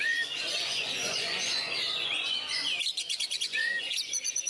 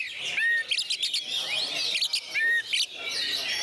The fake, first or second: first